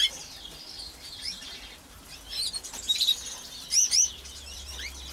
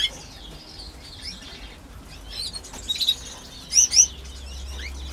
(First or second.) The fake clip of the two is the first